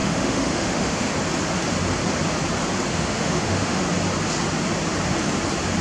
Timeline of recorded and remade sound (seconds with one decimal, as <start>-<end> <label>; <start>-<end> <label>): 0.0-1.1 remade; 1.1-2.9 recorded; 2.9-3.8 remade; 3.8-5.8 recorded